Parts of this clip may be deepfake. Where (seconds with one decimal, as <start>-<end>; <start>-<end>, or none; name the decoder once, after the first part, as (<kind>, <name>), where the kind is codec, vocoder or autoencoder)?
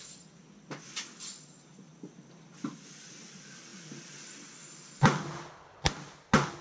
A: none